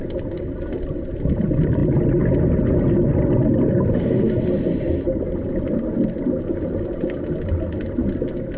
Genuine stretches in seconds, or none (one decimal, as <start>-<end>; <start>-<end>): 0.0-8.6